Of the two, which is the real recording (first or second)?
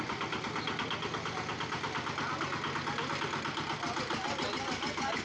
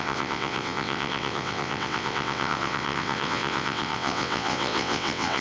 first